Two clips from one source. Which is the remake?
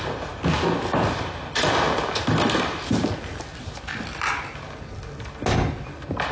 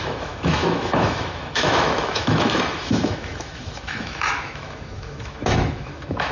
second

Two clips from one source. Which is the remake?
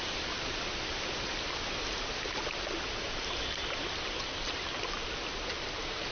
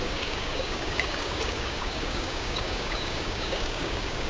second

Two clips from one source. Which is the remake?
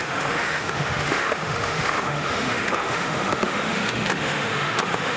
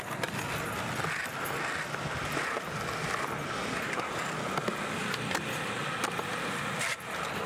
first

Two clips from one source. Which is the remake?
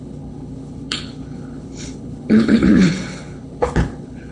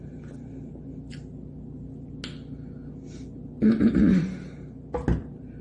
first